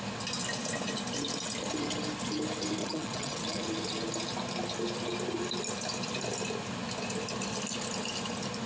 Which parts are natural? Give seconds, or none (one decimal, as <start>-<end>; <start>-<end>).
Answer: 0.0-2.8; 3.6-8.7